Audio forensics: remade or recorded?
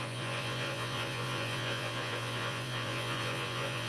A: remade